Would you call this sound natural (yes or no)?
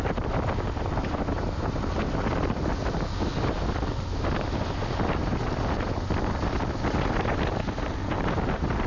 yes